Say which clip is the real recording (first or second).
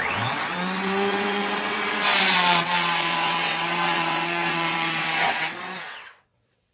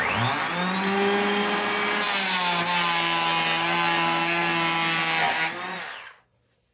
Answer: second